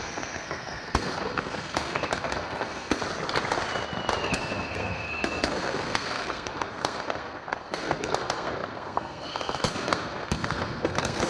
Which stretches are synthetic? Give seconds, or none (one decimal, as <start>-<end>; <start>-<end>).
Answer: 0.0-3.0; 4.2-11.3